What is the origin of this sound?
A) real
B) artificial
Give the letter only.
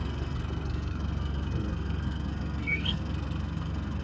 B